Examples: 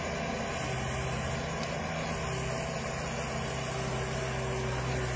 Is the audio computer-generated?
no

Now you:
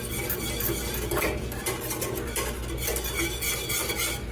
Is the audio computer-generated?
no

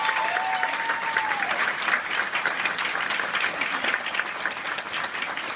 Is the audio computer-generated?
no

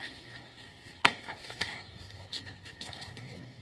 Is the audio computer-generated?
yes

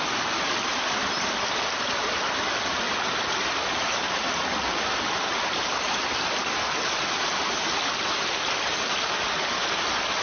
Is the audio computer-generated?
no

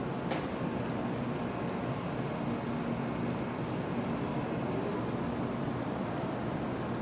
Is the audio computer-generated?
no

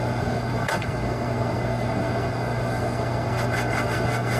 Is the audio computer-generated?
yes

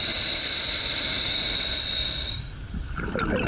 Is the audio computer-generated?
no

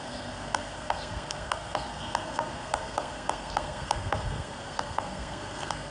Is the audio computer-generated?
yes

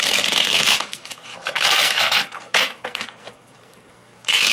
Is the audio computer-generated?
yes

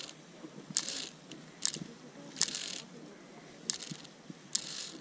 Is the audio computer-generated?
no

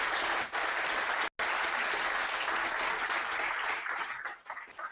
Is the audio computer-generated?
no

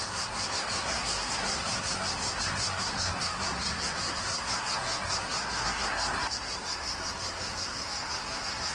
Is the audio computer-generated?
yes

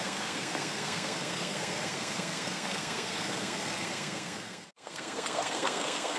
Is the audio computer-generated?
yes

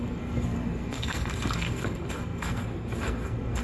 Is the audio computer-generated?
yes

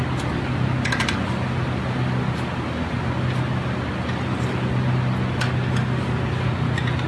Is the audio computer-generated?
no